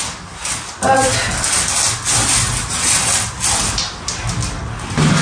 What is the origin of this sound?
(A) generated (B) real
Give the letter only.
B